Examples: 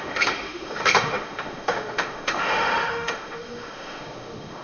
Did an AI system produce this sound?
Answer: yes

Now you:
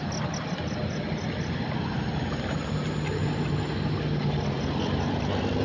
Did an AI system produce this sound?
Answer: no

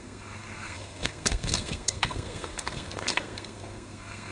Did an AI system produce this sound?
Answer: yes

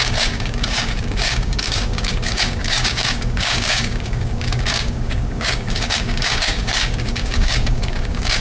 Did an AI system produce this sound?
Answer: yes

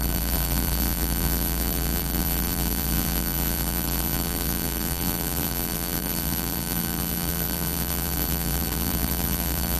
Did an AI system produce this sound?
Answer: yes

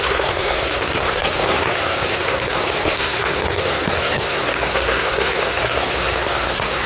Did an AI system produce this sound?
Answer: yes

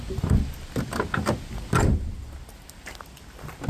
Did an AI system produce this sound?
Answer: no